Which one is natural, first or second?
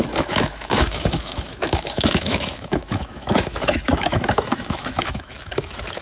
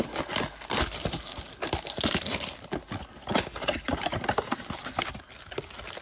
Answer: second